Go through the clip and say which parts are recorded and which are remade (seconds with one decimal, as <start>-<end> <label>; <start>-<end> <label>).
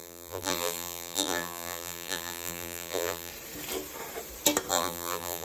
0.0-3.3 remade; 3.3-4.7 recorded; 4.7-5.4 remade